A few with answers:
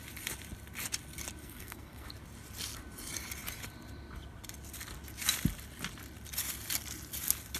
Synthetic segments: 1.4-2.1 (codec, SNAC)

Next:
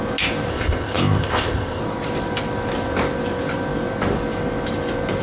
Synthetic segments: 0.5-1.8 (codec, ZipCodec)

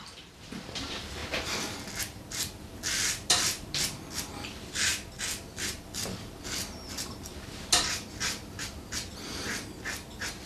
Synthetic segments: 0.0-4.9 (vocoder, BigVGAN v2); 5.4-10.5

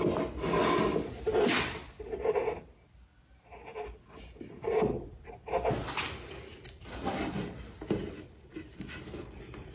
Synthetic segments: none

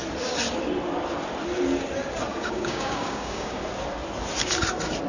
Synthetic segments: 2.3-3.6 (codec, DAC)

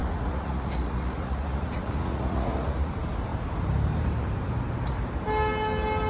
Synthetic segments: 0.0-2.9 (vocoder, Vocos)